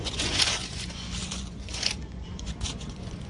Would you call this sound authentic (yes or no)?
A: no